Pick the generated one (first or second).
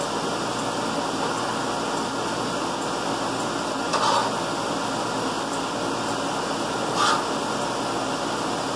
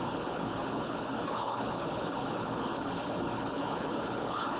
second